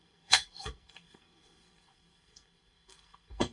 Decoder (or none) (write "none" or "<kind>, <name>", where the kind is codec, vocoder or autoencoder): codec, SNAC